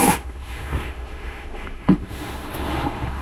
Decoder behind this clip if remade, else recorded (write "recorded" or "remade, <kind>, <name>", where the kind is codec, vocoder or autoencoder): remade, autoencoder, DAC-VAE